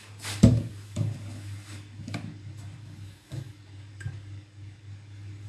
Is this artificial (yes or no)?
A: yes